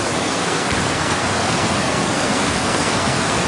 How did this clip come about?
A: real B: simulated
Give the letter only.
B